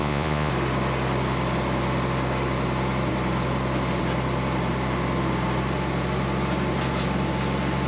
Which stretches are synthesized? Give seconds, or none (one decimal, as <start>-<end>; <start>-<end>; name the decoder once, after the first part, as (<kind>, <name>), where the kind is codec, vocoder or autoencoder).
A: 0.0-0.5 (vocoder, Vocos)